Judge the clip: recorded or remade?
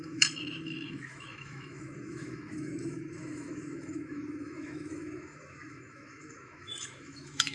remade